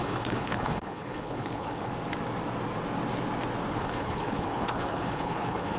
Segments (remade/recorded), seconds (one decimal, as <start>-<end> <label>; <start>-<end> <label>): 0.0-1.9 remade; 1.9-3.7 recorded; 3.7-5.8 remade